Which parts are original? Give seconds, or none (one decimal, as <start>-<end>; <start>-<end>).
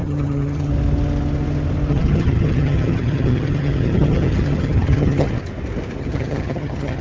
0.7-1.9; 5.4-6.0